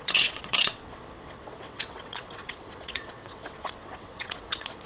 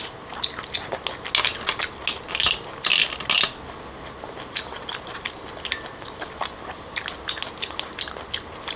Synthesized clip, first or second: first